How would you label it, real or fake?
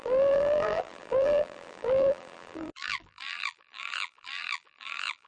fake